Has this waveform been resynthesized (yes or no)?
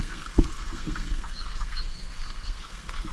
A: yes